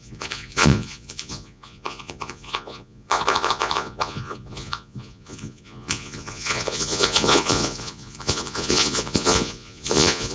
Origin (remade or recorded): remade